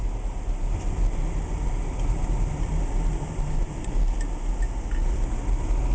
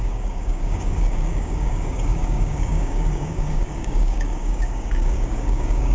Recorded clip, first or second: first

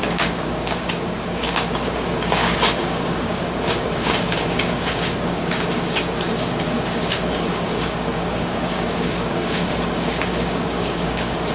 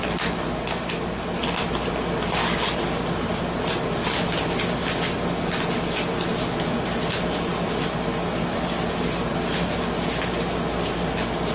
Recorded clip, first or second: second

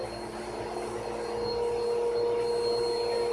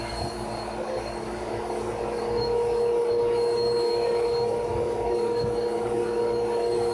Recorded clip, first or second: first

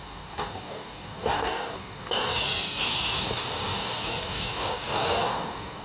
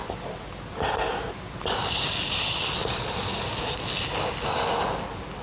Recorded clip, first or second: second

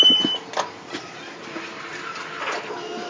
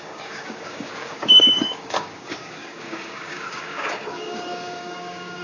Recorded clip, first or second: first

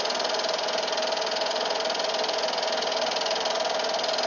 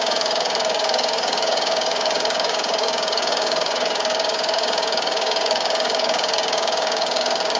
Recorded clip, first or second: first